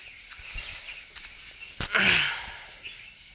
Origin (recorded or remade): recorded